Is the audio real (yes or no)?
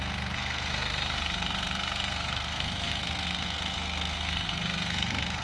no